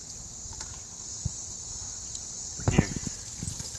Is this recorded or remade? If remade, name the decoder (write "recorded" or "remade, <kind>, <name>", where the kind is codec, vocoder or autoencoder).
recorded